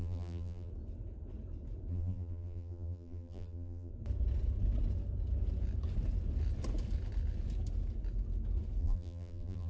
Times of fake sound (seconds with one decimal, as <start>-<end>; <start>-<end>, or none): 0.0-0.7; 1.9-3.9; 8.8-9.7